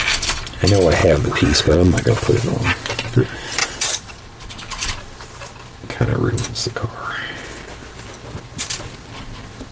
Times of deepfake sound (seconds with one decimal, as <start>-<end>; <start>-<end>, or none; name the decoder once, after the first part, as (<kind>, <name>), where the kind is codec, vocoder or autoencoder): 1.0-2.1 (vocoder, WaveNeXt); 3.6-4.9